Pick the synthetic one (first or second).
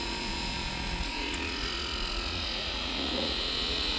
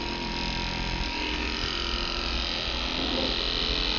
first